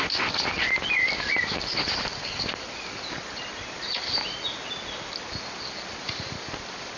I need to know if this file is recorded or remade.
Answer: recorded